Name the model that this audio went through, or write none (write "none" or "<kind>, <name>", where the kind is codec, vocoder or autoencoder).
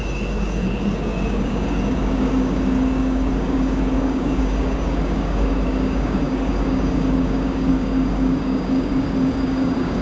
codec, DAC